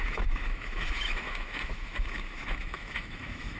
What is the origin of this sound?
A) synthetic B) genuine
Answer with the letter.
A